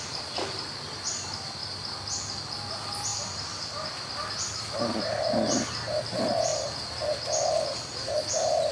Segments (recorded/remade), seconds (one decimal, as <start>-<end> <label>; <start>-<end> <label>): 0.0-3.1 recorded; 3.1-4.3 remade; 4.3-8.7 recorded

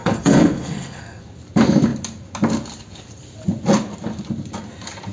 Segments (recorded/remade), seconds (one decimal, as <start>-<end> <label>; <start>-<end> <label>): 0.0-1.2 remade; 1.2-5.1 recorded

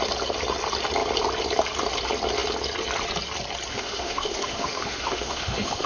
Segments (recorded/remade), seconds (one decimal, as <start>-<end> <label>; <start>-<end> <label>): 0.0-3.7 recorded; 3.7-5.9 remade

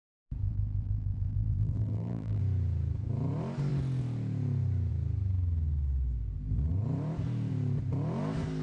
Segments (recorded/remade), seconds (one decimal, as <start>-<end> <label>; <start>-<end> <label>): 0.0-0.4 recorded; 0.4-2.4 remade; 2.4-8.6 recorded

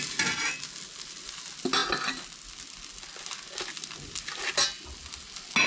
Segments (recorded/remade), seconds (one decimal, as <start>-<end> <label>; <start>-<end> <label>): 0.0-5.7 recorded